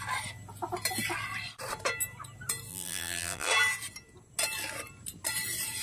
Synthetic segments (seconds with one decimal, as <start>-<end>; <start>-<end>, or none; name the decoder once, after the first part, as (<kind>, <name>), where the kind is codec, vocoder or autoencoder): 2.7-3.5 (vocoder, BigVGAN v2)